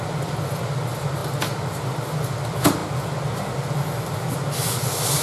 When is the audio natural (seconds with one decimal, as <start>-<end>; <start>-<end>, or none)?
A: 0.0-5.2